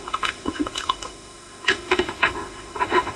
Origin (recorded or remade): remade